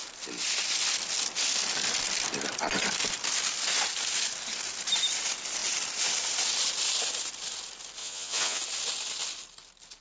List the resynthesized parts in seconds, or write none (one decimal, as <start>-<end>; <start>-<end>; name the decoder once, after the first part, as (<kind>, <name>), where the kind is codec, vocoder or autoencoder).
8.0-8.6 (vocoder, Vocos)